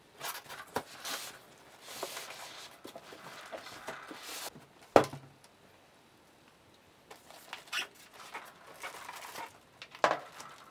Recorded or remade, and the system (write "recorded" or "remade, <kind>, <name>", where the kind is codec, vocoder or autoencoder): recorded